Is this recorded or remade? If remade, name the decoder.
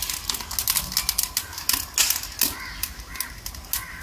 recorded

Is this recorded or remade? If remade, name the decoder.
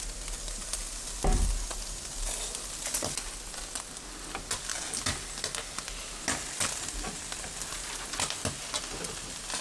recorded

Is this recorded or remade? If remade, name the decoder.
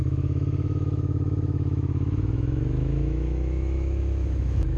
remade, autoencoder, DAC-VAE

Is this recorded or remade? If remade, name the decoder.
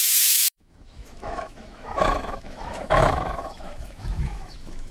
remade, autoencoder, DAC-VAE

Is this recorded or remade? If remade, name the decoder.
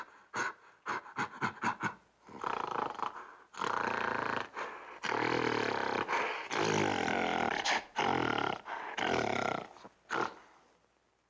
recorded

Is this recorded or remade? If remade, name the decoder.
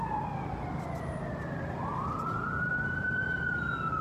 recorded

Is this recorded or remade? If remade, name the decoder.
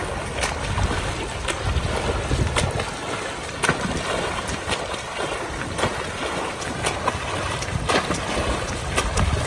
recorded